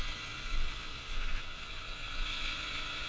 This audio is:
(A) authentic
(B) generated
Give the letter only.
B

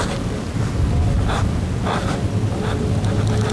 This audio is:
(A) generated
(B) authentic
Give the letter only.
B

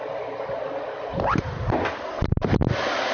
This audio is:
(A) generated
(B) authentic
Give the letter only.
B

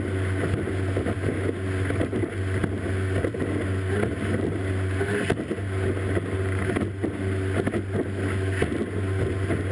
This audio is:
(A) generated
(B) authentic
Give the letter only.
B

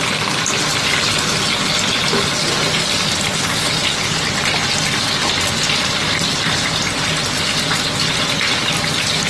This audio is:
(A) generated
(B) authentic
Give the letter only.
B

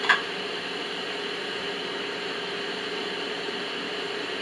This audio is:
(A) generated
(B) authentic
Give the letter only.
A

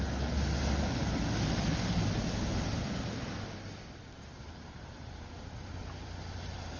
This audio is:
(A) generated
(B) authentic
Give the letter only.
B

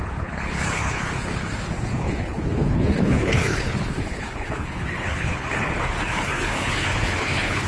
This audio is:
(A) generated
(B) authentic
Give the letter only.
A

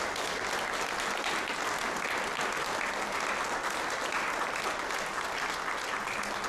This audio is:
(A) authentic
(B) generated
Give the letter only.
A